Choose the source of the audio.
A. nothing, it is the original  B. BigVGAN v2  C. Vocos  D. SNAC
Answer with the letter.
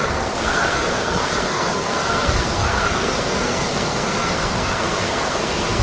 D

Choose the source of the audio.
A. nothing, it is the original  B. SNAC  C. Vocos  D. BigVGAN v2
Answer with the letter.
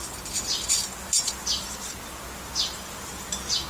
A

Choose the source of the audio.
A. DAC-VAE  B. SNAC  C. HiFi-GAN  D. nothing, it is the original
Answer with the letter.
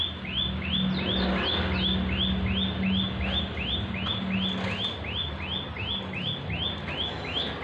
D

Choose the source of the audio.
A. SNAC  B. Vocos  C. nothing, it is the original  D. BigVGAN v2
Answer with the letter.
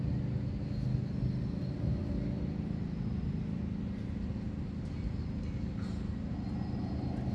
C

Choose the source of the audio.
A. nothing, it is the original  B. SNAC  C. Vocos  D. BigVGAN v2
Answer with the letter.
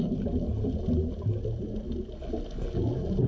A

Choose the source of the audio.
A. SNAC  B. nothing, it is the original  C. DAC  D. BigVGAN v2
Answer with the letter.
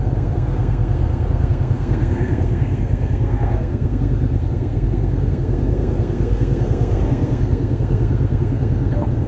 A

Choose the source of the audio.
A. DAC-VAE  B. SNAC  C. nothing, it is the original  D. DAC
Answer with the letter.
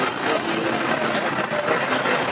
C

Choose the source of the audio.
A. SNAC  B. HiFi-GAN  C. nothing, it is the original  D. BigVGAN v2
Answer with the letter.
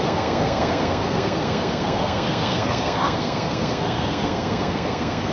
A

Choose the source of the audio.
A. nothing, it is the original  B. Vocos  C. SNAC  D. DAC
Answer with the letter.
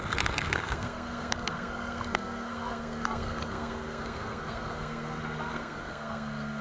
C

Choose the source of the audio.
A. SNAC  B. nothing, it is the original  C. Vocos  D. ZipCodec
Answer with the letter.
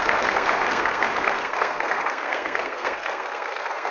A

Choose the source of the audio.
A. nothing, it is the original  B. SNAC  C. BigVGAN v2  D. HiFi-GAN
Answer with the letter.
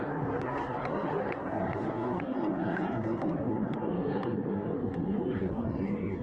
B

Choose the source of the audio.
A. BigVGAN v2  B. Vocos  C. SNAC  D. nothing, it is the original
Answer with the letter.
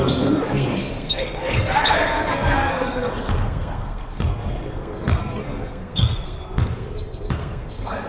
C